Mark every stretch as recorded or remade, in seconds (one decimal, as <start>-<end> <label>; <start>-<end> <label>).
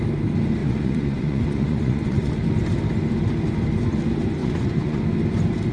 0.0-0.6 recorded; 0.6-2.3 remade; 2.3-4.4 recorded; 4.4-5.0 remade; 5.0-5.7 recorded